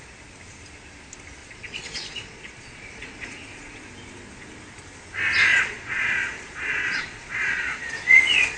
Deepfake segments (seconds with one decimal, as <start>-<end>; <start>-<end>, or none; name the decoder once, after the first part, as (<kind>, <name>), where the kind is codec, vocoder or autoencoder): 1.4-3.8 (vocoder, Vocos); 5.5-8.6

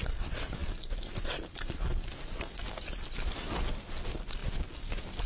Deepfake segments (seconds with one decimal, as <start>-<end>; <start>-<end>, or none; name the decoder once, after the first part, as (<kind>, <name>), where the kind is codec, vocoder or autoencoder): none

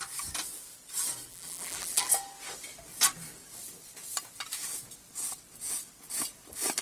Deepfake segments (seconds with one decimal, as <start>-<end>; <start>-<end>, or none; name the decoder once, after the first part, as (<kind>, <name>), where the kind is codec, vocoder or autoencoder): 1.3-2.1 (vocoder, BigVGAN v2)

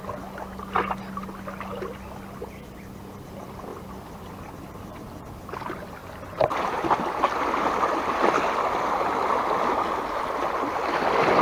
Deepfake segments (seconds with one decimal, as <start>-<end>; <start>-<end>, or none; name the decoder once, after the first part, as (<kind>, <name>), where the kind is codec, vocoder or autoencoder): 3.7-5.4 (vocoder, BigVGAN v2)

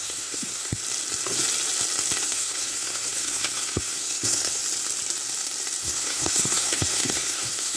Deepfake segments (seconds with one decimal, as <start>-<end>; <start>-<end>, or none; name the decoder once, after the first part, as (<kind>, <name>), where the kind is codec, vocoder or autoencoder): 0.0-0.8 (codec, SNAC); 2.2-4.6; 5.8-7.8